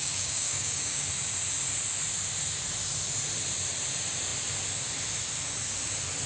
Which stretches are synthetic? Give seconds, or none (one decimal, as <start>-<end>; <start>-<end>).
0.0-1.1

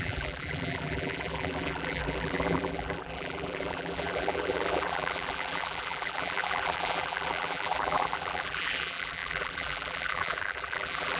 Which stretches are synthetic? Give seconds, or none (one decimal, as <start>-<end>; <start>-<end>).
0.0-11.2